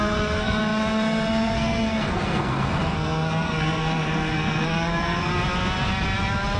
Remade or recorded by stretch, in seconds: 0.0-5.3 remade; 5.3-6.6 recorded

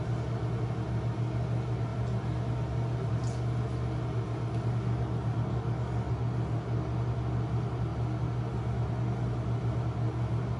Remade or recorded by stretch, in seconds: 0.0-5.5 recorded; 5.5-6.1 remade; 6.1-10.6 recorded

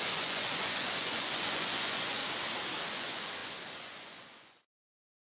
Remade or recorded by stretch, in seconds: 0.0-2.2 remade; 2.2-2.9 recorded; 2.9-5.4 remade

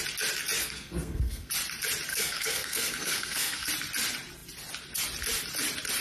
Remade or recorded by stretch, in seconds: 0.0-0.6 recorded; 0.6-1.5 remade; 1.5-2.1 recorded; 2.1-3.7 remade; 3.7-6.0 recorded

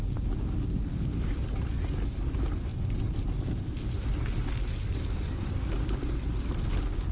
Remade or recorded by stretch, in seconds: 0.0-2.7 recorded; 2.7-6.5 remade; 6.5-7.1 recorded